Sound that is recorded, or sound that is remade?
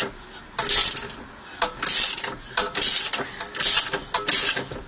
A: recorded